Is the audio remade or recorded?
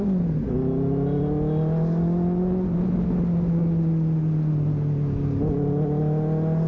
recorded